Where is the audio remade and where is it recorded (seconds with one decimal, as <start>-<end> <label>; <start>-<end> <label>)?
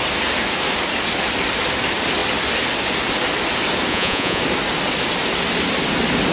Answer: 0.0-3.9 recorded; 3.9-4.4 remade; 4.4-6.3 recorded